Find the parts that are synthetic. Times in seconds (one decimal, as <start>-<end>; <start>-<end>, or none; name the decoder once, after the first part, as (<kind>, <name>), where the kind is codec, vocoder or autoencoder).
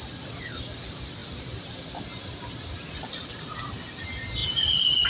4.4-5.1 (vocoder, BigVGAN v2)